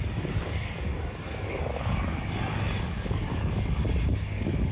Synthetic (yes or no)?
yes